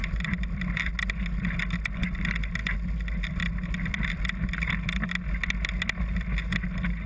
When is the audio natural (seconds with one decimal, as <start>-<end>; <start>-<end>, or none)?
0.8-7.1